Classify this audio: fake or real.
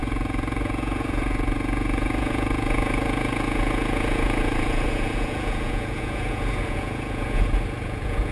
fake